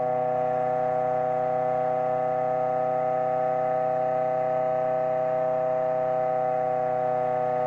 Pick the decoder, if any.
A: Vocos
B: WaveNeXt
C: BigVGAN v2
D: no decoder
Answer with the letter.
D